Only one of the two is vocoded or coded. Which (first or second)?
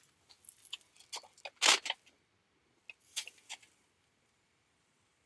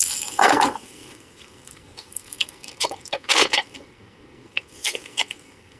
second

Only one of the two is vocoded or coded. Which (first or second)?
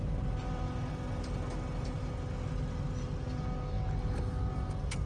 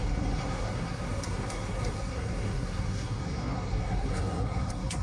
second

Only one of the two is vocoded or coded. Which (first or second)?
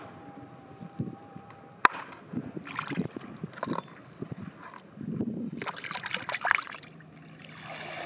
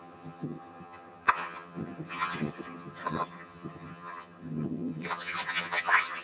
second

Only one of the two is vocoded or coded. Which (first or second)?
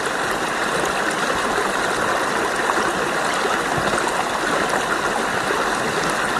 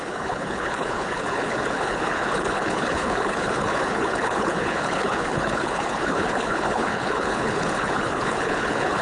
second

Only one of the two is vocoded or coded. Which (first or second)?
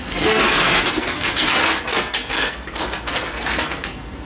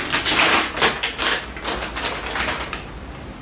first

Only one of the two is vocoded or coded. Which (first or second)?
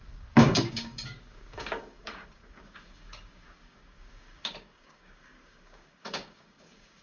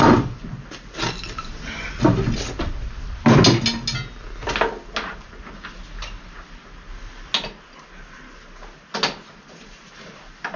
first